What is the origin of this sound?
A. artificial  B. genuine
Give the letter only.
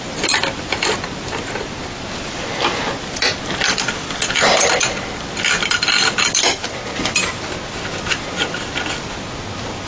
B